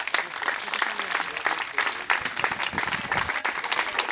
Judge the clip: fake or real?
real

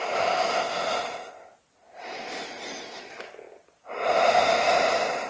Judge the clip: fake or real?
real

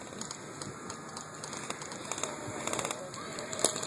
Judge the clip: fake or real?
real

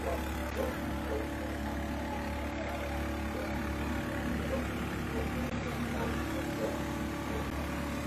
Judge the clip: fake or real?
real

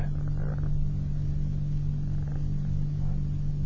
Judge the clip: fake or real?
real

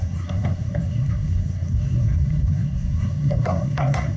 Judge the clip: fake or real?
fake